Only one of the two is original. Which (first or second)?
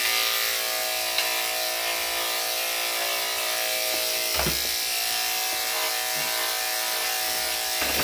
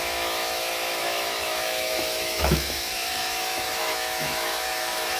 first